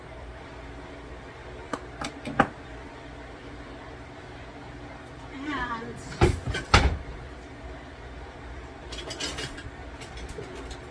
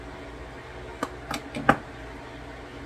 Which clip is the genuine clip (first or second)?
second